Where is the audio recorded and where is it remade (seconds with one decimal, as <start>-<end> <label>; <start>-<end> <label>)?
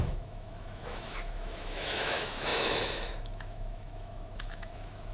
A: 0.0-5.1 remade